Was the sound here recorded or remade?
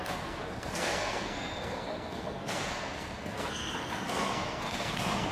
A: remade